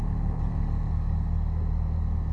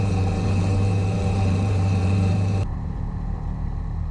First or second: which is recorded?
first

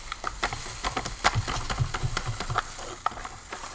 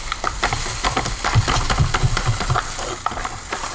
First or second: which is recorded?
first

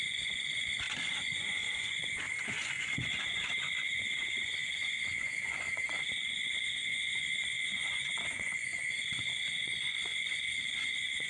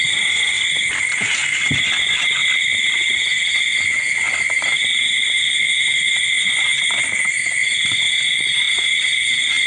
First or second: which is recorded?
second